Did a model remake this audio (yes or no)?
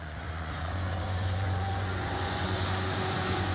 yes